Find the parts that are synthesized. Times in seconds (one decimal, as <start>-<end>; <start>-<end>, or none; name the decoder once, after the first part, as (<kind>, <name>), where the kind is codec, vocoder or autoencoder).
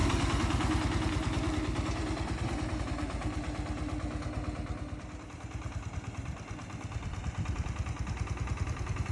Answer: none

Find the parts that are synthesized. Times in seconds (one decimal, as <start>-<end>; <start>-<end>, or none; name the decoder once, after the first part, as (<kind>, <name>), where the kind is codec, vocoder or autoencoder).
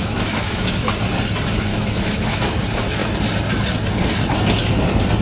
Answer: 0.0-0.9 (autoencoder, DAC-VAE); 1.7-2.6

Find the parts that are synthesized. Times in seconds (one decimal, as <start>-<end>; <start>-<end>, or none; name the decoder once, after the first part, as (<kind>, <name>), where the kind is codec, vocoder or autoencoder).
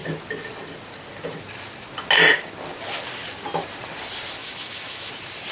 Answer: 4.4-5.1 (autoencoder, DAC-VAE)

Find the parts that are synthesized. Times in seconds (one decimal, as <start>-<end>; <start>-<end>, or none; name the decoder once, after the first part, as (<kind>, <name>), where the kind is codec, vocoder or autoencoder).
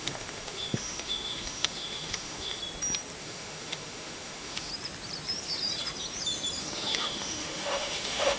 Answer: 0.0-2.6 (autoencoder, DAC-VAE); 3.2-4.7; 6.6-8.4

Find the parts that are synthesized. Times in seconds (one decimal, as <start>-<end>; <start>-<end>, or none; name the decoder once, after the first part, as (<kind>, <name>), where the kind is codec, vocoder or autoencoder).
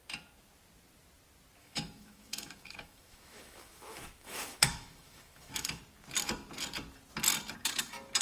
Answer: 1.6-5.8 (autoencoder, DAC-VAE)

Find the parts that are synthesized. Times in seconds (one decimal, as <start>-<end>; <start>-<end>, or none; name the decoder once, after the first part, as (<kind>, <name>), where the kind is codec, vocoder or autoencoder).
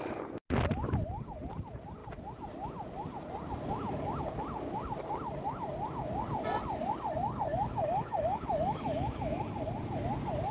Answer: 7.5-9.4 (autoencoder, DAC-VAE)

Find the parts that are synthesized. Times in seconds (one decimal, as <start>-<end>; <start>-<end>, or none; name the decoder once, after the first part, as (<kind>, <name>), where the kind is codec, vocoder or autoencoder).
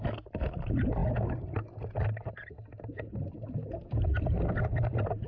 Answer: none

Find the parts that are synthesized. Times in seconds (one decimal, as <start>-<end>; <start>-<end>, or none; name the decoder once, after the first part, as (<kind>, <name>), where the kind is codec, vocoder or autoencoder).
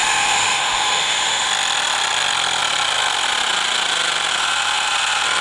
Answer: 0.0-1.5 (autoencoder, DAC-VAE)